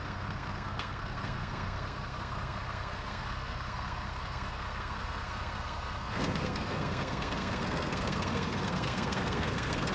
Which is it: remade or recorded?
remade